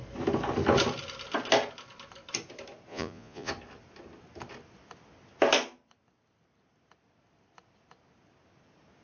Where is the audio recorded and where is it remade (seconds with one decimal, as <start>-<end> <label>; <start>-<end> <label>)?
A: 0.0-2.9 recorded; 2.9-3.5 remade; 3.5-9.0 recorded